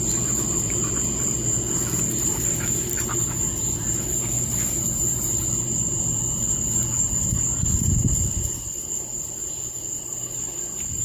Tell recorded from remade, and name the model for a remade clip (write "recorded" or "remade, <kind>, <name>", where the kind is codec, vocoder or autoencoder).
remade, vocoder, BigVGAN v2